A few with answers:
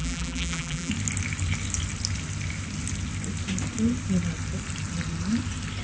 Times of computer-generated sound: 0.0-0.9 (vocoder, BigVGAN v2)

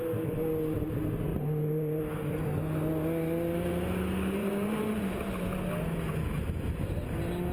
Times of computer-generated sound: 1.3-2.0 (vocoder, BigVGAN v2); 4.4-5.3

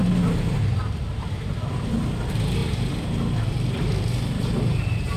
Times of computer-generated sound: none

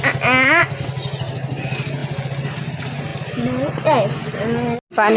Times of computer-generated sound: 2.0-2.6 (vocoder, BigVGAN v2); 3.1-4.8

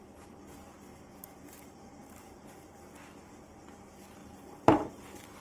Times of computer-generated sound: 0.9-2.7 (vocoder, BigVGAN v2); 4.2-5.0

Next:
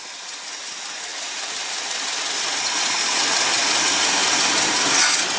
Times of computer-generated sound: 1.1-3.2 (vocoder, BigVGAN v2); 4.2-5.0

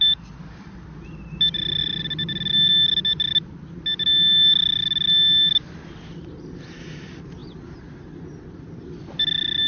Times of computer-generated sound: none